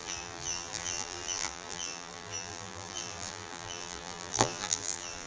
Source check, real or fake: fake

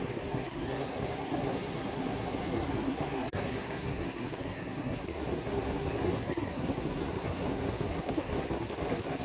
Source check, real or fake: fake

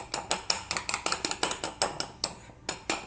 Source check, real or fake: real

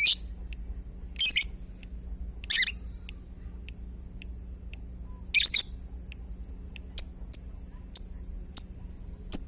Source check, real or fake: real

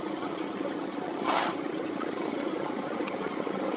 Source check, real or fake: fake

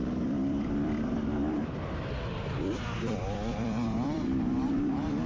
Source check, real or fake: fake